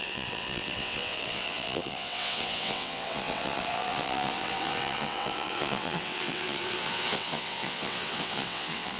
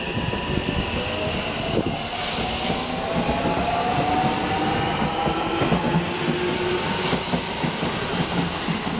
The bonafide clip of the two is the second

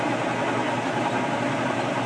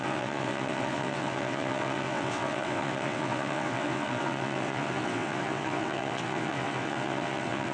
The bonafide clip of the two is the first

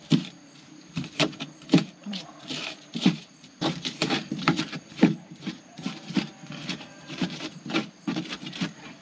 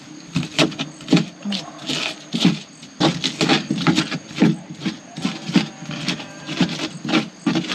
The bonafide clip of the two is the second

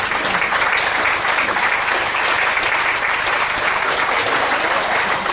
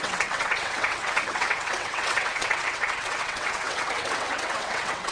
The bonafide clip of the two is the first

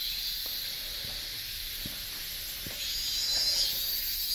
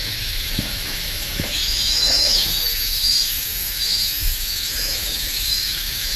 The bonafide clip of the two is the first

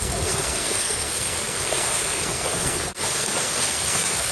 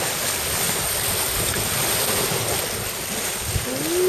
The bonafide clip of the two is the second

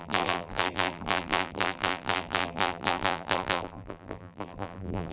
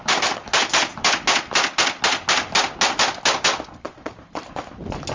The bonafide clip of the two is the second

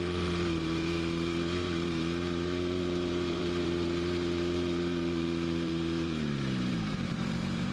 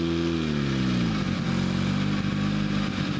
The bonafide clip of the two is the second